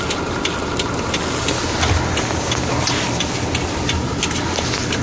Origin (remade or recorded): recorded